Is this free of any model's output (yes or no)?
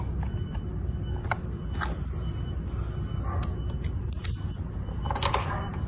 yes